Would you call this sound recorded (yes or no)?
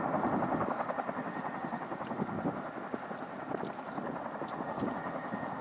yes